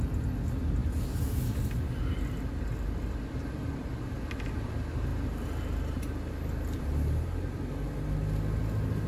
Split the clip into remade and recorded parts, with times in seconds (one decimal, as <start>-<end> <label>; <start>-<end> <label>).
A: 0.0-9.1 recorded